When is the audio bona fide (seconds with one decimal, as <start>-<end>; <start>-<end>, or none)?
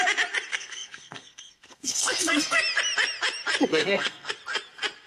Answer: 0.0-0.5; 2.6-3.7; 4.3-5.1